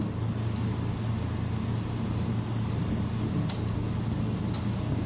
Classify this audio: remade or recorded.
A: recorded